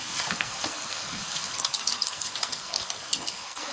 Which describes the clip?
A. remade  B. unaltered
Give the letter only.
A